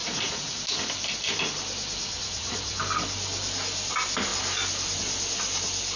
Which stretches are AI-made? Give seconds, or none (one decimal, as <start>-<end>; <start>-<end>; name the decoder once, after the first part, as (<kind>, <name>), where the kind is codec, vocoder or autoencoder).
0.0-0.6 (vocoder, Vocos); 2.0-2.8